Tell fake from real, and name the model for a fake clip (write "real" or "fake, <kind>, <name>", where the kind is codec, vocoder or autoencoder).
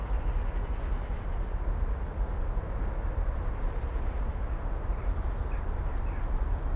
real